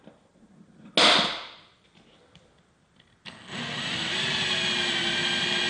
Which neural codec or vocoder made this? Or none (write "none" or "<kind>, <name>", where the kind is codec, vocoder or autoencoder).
none